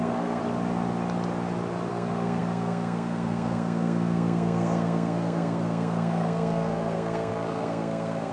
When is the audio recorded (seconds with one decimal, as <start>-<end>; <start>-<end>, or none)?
0.4-1.9